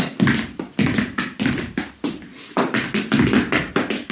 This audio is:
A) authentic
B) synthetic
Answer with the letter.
A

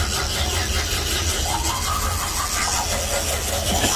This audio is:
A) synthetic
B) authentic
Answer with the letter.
B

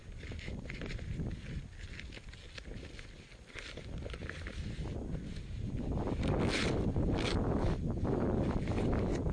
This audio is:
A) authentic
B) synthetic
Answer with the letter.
A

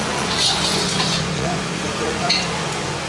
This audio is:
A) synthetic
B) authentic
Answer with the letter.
A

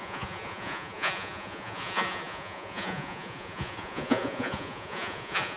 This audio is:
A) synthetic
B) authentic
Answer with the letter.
A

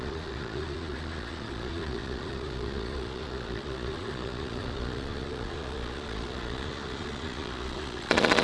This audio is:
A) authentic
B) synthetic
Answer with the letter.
B